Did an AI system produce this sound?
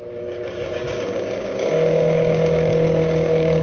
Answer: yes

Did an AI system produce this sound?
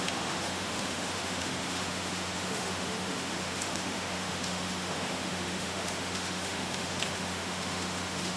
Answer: yes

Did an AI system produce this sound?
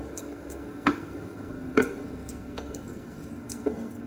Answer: yes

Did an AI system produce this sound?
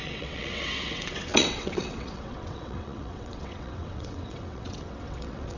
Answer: yes